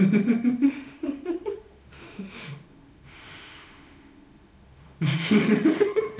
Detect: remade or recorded remade